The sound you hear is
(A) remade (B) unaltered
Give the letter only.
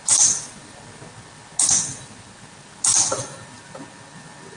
B